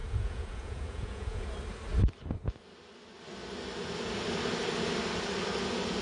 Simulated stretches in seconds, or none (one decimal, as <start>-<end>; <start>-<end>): 0.0-1.5